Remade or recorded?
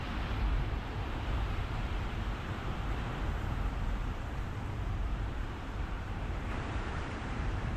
remade